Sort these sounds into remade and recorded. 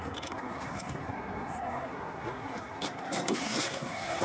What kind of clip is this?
remade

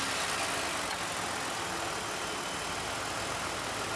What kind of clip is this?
recorded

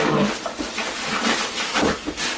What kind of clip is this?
recorded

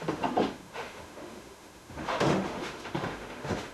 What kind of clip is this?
remade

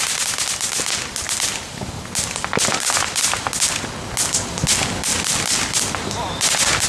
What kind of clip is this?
recorded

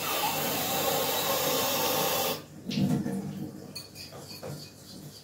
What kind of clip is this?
recorded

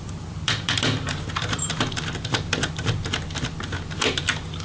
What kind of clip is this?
remade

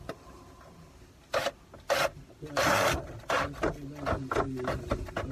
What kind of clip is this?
recorded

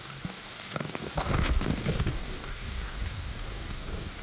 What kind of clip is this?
remade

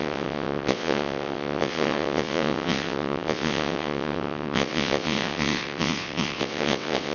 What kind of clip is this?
remade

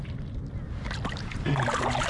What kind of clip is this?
recorded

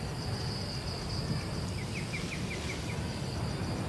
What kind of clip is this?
recorded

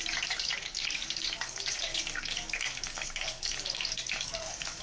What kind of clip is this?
remade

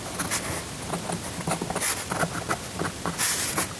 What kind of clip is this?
recorded